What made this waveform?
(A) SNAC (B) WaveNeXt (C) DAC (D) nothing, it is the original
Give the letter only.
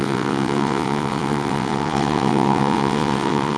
B